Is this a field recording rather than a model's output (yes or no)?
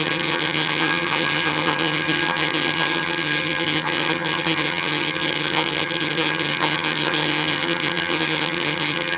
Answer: no